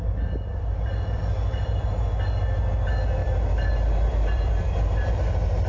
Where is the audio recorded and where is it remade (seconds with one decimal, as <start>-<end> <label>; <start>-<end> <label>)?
0.0-0.5 recorded; 0.5-1.9 remade; 1.9-3.2 recorded; 3.2-5.1 remade; 5.1-5.7 recorded